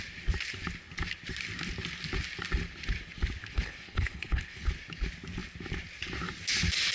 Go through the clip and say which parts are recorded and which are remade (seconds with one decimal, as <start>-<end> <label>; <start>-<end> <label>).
0.0-3.4 recorded; 3.4-4.7 remade; 4.7-6.9 recorded

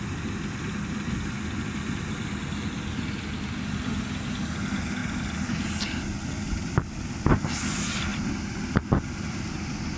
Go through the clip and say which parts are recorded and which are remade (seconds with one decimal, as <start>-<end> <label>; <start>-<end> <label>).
0.0-10.0 recorded

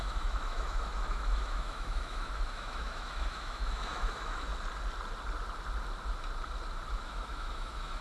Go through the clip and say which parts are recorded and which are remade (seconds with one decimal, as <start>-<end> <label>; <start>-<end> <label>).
0.0-4.5 remade; 4.5-7.0 recorded; 7.0-8.0 remade

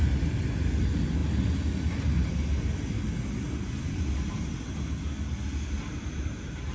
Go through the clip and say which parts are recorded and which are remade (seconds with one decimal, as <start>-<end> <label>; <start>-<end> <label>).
0.0-6.7 recorded

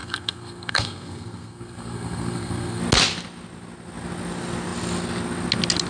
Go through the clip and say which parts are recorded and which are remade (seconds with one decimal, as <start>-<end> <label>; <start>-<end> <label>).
0.0-2.8 remade; 2.8-5.9 recorded

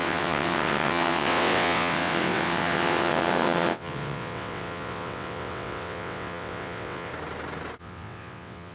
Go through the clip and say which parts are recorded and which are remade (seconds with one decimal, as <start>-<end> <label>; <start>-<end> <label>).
0.0-7.1 remade; 7.1-7.8 recorded; 7.8-8.7 remade